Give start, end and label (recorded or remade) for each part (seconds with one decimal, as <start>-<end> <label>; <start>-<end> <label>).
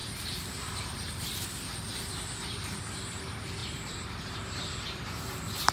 0.0-2.8 remade; 2.8-3.6 recorded; 3.6-5.7 remade